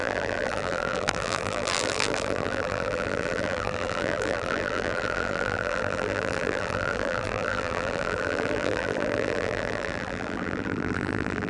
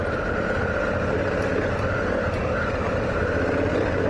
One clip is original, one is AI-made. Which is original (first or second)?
second